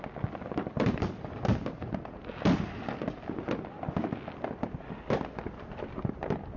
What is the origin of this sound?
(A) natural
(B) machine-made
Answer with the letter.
A